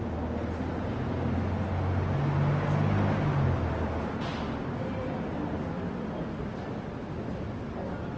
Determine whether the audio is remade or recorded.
recorded